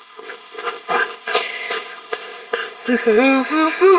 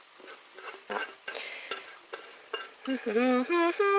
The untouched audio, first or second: second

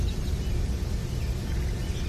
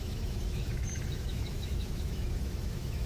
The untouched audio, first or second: first